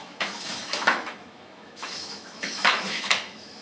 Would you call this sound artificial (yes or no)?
yes